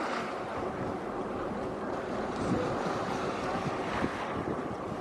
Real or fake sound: real